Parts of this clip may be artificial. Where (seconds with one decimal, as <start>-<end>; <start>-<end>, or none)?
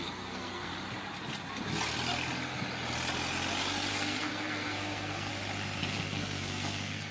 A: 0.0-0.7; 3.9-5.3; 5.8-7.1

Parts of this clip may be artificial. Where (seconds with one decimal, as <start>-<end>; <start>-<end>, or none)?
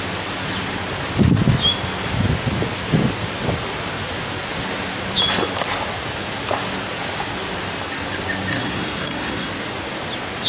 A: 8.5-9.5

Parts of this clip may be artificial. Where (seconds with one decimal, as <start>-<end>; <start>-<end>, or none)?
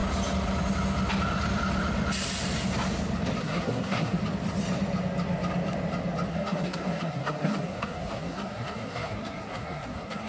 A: 3.4-4.2; 6.3-10.3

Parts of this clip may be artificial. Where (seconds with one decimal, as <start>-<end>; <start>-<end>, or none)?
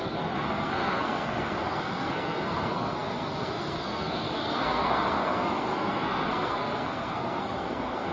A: 0.0-8.1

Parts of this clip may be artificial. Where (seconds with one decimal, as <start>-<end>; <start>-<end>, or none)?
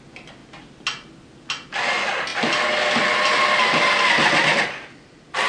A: none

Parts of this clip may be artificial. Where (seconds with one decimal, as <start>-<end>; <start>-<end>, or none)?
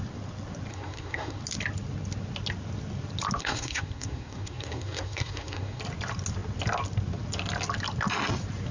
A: 0.7-1.4; 3.4-5.8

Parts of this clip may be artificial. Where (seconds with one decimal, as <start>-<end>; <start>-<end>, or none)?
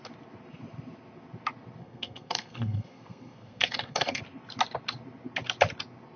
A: 1.8-4.2